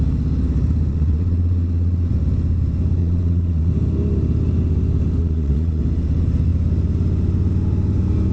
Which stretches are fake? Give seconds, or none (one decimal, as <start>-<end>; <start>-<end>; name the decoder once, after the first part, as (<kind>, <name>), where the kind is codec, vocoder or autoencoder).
0.9-2.1 (vocoder, Vocos); 3.0-3.7; 5.2-5.8